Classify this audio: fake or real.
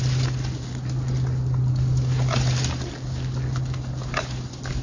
real